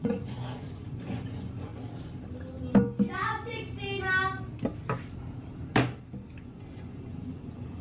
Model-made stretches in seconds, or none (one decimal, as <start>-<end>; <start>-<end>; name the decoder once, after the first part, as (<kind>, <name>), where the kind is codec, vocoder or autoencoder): 0.0-1.7 (vocoder, Vocos); 6.4-7.8